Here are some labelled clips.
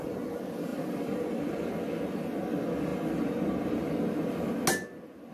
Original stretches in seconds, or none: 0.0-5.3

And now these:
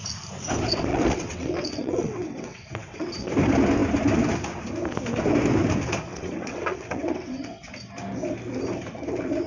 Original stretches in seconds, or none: 0.0-0.9; 3.3-6.1; 7.7-9.5

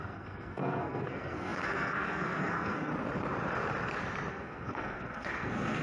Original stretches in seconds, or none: 2.9-4.3

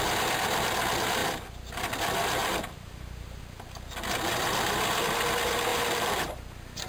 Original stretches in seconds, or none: 0.0-1.2; 1.9-2.4; 3.4-5.7; 6.3-6.9

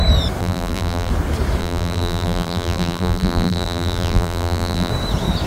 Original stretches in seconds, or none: 0.0-0.4; 1.1-1.6; 4.9-5.5

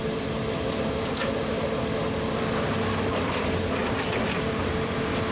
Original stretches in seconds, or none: 0.0-1.2; 3.8-4.6

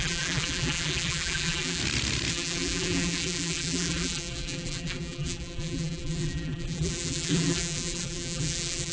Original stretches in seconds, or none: 1.8-2.3

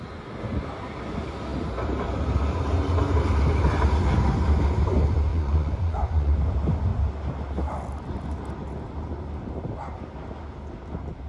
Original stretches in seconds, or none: 0.0-5.3; 6.4-11.3